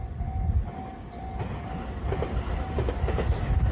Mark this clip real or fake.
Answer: real